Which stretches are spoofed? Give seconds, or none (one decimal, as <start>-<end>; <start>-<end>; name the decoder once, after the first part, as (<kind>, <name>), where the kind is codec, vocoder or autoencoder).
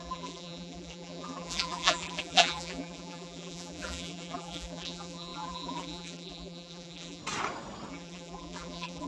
0.0-7.2 (vocoder, BigVGAN v2); 7.9-9.1